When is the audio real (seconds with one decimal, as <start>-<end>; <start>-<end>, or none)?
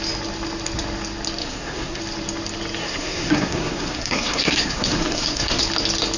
0.0-1.4; 2.0-2.8; 5.6-6.2